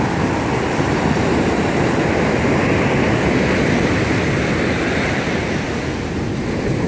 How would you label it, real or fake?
real